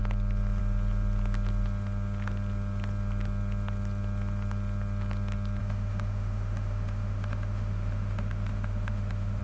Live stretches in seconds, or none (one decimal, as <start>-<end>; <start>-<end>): 0.0-5.6